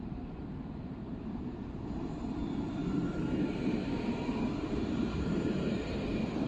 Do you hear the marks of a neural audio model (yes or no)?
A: yes